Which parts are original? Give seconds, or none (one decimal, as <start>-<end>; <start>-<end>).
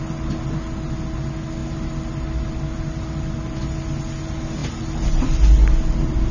0.0-6.3